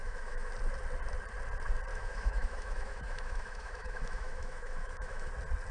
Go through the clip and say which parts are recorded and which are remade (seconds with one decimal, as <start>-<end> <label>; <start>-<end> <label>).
0.0-0.5 remade; 0.5-1.9 recorded; 1.9-5.3 remade; 5.3-5.7 recorded